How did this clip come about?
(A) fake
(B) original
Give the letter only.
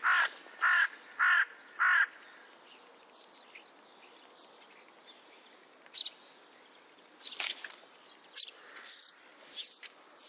B